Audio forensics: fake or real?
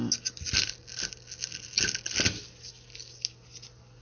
real